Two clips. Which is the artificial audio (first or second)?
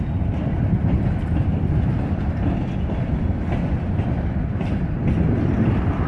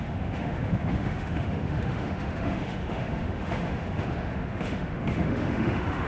second